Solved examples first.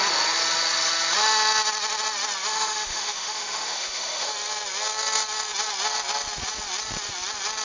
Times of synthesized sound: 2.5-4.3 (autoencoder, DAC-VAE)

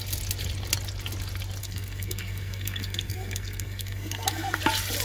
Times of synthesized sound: 1.6-4.6 (codec, SNAC)

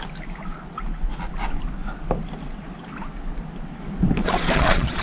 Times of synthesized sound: 4.2-5.0 (vocoder, Vocos)

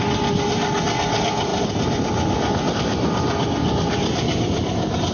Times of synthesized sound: none

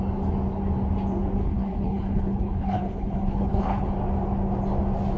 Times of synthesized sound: 1.4-3.9 (codec, HILCodec)

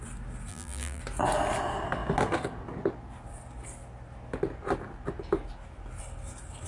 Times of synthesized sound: 0.5-1.0 (vocoder, BigVGAN v2)

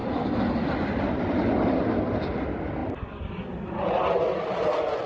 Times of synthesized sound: none